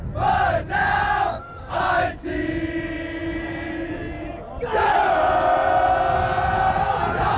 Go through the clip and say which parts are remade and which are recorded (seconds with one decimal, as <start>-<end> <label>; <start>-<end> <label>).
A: 0.0-1.3 recorded; 1.3-1.8 remade; 1.8-7.4 recorded